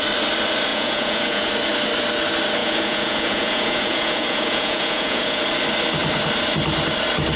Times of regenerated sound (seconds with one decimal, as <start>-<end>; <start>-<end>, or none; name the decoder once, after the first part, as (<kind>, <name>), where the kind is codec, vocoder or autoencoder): 0.7-1.5 (vocoder, Vocos); 2.6-5.4

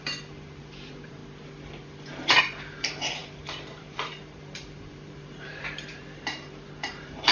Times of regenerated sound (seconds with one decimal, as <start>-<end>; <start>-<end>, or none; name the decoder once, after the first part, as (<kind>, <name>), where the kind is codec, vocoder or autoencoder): 0.0-1.2 (vocoder, BigVGAN v2); 2.4-3.2; 3.7-7.3

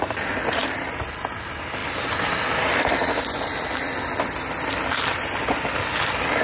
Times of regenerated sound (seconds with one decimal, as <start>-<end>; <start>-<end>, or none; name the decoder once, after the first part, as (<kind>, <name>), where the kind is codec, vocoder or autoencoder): none

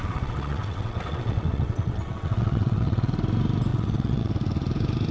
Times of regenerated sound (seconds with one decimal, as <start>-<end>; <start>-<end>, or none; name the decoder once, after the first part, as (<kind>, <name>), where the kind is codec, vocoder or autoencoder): 0.0-3.1 (vocoder, WaveNeXt); 3.7-4.3

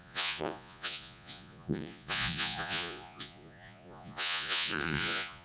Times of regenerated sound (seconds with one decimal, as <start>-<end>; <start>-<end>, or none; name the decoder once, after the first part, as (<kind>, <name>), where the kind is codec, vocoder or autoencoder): 0.0-5.4 (vocoder, Vocos)

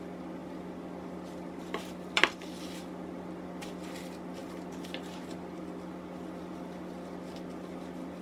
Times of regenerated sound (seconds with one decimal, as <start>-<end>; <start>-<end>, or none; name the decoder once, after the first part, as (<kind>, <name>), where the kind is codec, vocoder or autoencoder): 0.4-4.0 (vocoder, BigVGAN v2)